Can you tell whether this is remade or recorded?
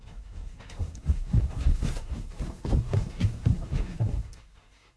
remade